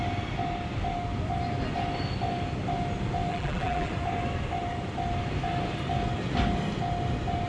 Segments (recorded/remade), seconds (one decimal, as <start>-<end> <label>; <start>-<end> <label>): 0.0-3.3 recorded; 3.3-3.9 remade; 3.9-7.5 recorded